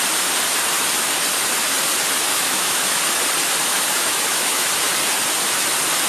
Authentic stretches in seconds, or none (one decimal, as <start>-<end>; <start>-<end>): 0.0-2.3; 3.0-3.7; 4.7-6.1